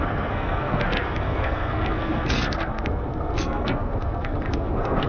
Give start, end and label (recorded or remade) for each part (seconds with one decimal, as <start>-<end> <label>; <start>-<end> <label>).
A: 0.0-5.1 remade